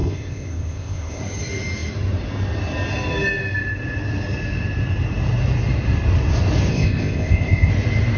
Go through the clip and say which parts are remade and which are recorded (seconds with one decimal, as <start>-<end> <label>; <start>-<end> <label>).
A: 0.0-1.2 remade; 1.2-6.7 recorded; 6.7-7.7 remade; 7.7-8.2 recorded